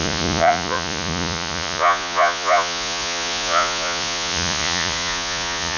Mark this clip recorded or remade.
remade